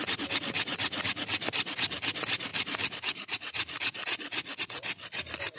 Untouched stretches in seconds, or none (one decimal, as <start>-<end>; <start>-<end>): 0.0-5.6